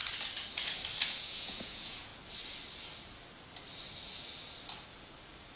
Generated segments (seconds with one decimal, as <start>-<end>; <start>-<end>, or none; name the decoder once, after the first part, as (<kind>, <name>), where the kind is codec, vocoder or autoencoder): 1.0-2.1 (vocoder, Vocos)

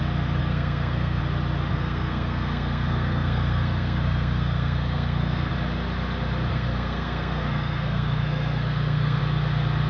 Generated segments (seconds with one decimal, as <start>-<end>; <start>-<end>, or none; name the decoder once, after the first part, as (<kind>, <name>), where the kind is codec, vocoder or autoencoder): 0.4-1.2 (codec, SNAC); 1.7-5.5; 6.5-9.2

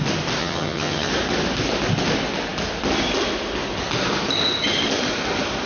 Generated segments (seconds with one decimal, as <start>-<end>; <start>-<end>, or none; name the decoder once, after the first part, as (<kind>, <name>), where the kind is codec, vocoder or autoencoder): 0.4-1.1 (vocoder, HiFi-GAN)